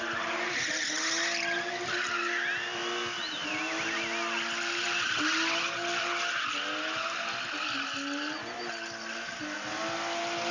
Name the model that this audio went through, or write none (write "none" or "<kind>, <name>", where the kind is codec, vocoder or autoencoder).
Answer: none